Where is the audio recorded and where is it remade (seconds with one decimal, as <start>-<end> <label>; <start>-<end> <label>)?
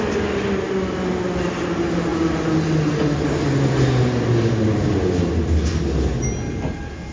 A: 0.0-7.1 recorded